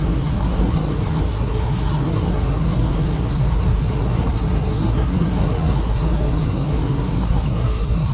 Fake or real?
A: fake